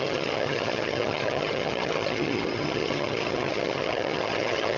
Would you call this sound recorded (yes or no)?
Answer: no